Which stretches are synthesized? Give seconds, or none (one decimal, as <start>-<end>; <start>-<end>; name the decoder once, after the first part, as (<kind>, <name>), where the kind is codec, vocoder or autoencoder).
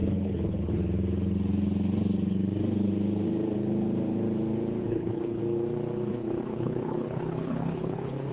0.0-0.8 (codec, HILCodec); 4.8-5.4; 6.1-8.3